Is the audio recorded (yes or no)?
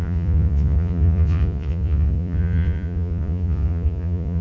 no